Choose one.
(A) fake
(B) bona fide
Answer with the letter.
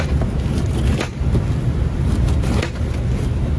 B